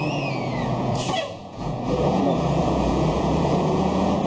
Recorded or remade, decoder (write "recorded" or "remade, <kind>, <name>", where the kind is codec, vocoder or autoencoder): remade, vocoder, Vocos